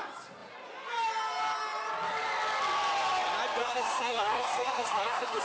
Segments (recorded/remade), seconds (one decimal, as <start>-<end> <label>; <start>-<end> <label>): 0.0-3.6 recorded; 3.6-5.4 remade